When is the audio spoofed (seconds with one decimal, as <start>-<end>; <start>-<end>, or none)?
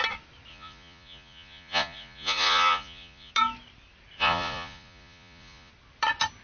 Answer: 0.5-3.3; 4.2-5.7